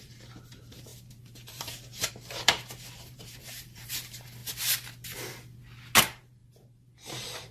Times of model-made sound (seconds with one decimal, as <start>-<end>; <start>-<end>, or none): 0.0-4.4; 6.0-7.5